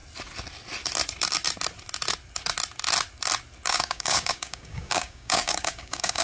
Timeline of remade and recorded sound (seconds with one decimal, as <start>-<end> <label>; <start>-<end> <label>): 0.0-3.7 recorded; 3.7-6.2 remade